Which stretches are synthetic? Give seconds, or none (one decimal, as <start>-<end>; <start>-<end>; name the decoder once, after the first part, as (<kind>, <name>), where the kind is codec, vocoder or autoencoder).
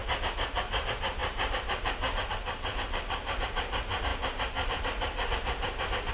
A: 0.6-6.1 (vocoder, BigVGAN v2)